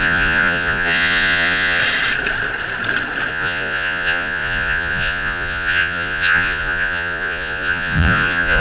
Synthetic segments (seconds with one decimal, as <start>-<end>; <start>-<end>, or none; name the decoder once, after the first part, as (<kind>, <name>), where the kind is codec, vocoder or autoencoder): 0.0-1.8 (vocoder, Vocos); 3.3-8.6